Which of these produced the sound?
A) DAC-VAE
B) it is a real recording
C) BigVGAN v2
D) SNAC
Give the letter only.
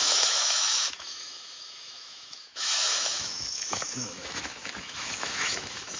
A